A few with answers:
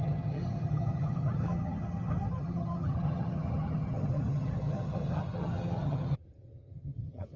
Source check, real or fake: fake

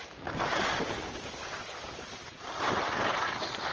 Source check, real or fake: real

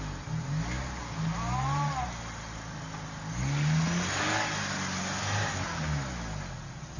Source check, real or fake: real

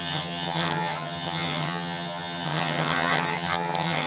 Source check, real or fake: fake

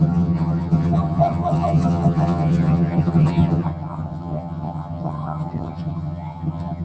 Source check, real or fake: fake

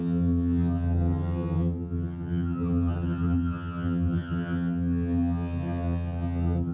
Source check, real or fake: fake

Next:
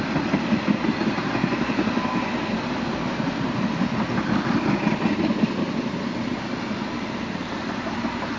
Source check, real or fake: real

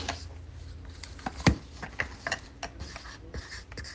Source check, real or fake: real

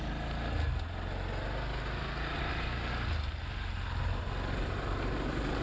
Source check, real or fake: real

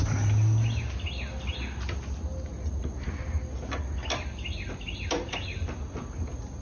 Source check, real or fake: real